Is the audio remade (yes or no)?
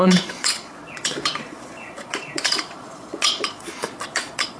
yes